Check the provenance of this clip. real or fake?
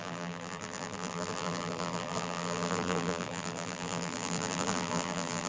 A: fake